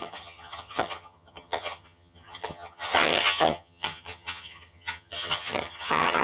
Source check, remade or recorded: remade